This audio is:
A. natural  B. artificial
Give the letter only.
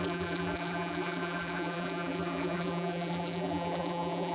B